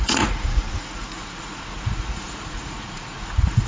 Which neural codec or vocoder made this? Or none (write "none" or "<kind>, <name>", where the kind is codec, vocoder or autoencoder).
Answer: vocoder, Vocos